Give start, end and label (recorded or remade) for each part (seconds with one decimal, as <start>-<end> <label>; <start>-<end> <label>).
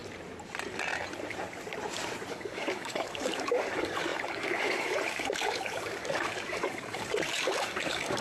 0.0-2.3 recorded; 2.3-8.2 remade